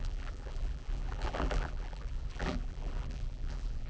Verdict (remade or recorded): remade